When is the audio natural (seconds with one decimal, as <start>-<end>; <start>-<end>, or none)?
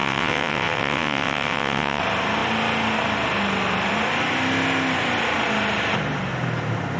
2.0-7.0